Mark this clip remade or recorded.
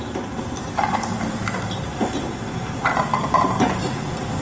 recorded